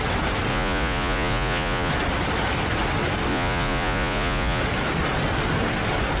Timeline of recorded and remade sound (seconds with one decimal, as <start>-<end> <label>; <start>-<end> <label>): 0.0-0.5 recorded; 0.5-1.9 remade; 1.9-3.3 recorded; 3.3-4.6 remade; 4.6-6.2 recorded